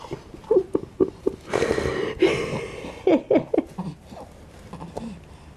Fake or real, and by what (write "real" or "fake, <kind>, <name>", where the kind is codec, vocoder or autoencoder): real